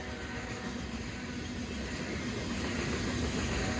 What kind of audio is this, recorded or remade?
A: recorded